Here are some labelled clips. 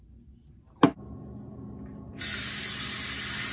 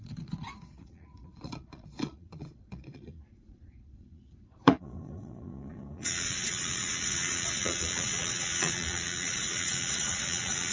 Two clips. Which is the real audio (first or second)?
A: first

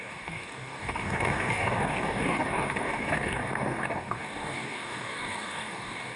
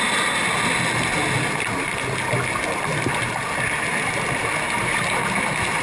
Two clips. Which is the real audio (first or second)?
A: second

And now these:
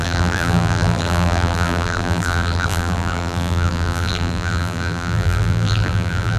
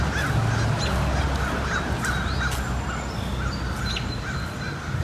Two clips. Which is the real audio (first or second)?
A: second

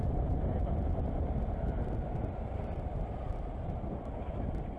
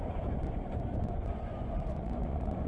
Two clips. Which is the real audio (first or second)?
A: first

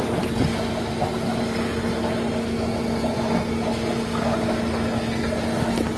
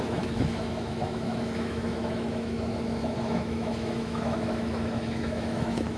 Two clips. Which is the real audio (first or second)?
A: first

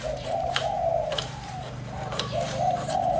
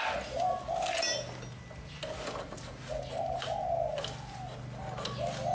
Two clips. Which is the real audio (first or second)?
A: second